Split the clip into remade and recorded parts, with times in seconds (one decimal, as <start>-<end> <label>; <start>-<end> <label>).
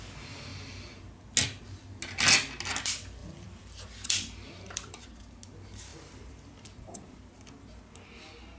0.0-3.2 recorded; 3.2-5.1 remade; 5.1-5.9 recorded; 5.9-7.8 remade; 7.8-8.6 recorded